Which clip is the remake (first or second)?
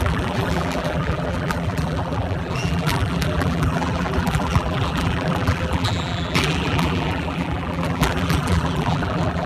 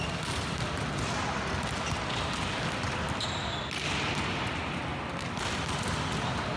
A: first